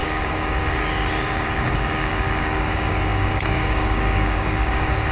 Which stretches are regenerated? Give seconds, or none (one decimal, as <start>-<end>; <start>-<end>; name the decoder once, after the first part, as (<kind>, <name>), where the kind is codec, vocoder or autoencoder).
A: 0.0-5.1 (codec, DAC)